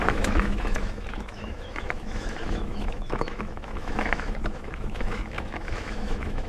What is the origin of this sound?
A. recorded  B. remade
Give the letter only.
B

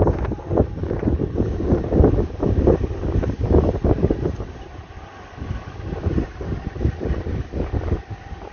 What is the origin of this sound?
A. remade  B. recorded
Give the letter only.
B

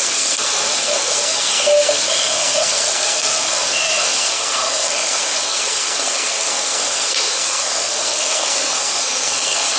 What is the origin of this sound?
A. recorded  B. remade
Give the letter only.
B